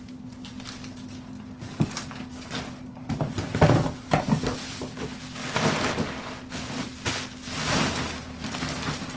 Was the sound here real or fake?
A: real